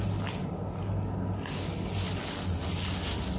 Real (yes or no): yes